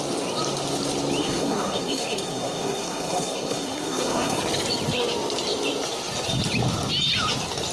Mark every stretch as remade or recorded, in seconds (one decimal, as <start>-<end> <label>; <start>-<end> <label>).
0.0-1.2 recorded; 1.2-4.4 remade; 4.4-7.7 recorded